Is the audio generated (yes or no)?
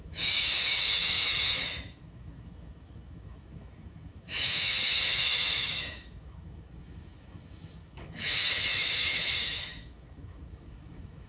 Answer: yes